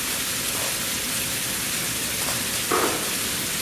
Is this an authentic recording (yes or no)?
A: yes